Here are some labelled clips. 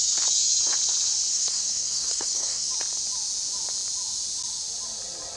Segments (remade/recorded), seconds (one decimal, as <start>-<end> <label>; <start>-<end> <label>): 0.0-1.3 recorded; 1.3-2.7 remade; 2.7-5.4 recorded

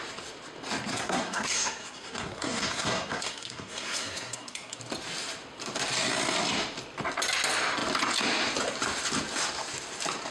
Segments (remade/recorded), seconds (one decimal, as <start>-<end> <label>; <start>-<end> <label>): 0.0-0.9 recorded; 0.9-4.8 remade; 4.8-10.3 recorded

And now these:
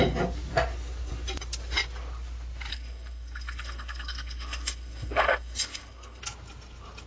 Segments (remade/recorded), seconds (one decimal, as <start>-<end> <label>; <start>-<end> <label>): 0.0-2.7 recorded; 2.7-6.2 remade; 6.2-7.1 recorded

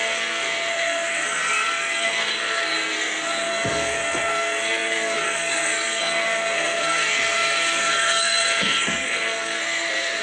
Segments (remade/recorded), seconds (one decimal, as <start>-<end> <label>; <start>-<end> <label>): 0.0-10.2 remade

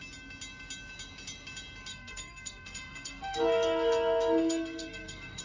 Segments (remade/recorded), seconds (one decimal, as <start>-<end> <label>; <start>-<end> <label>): 0.0-1.9 recorded; 1.9-5.4 remade

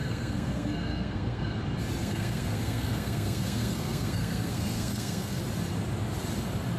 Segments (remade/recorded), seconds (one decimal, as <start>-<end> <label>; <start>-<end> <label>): 0.0-1.6 remade; 1.6-2.0 recorded; 2.0-5.4 remade; 5.4-6.8 recorded

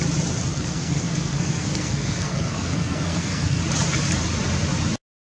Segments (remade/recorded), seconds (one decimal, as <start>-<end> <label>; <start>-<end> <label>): 0.0-0.5 recorded; 0.5-3.6 remade; 3.6-5.2 recorded